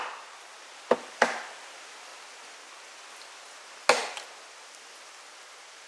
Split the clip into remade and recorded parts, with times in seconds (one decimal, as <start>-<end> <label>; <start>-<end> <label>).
0.0-2.1 recorded; 2.1-3.6 remade; 3.6-5.9 recorded